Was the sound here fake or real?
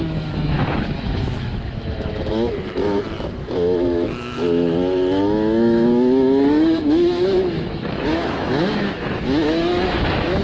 fake